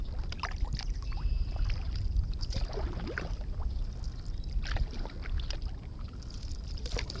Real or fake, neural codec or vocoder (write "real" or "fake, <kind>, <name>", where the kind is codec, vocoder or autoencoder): fake, vocoder, BigVGAN v2